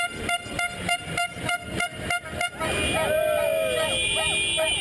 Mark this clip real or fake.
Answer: real